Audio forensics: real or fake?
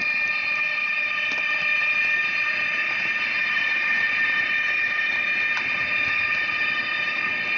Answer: real